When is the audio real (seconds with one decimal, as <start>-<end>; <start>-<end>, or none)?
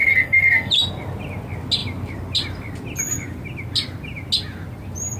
0.7-5.2